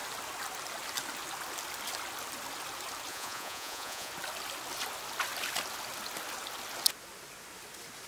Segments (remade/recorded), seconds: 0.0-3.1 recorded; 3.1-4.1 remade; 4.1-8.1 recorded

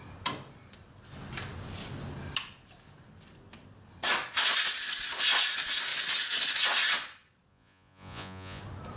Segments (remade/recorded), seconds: 0.0-7.5 recorded; 7.5-8.6 remade; 8.6-9.0 recorded

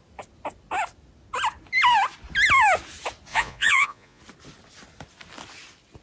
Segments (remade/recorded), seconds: 0.0-3.3 recorded; 3.3-4.2 remade; 4.2-6.0 recorded

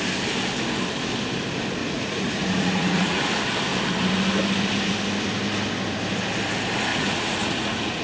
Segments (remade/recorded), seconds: 0.0-1.8 recorded; 1.8-3.3 remade; 3.3-6.9 recorded; 6.9-8.0 remade

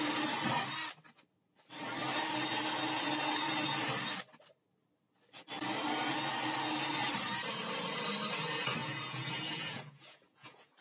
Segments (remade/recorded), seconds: 0.0-8.8 recorded; 8.8-10.8 remade